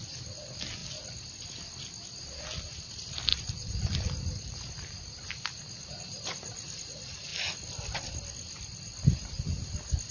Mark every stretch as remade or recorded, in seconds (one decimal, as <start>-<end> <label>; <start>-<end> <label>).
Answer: 0.0-0.8 remade; 0.8-2.8 recorded; 2.8-10.1 remade